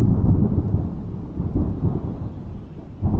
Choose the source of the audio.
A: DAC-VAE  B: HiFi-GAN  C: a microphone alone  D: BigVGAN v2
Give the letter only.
C